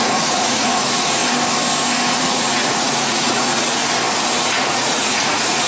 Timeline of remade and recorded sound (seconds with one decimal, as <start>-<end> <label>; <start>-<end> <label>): 0.0-1.2 remade; 1.2-2.2 recorded; 2.2-3.8 remade; 3.8-4.5 recorded; 4.5-5.7 remade